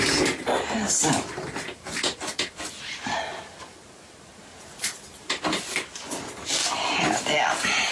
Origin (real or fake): real